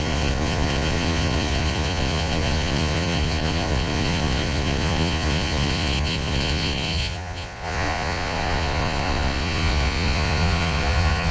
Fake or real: fake